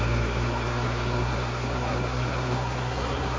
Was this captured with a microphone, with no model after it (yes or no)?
no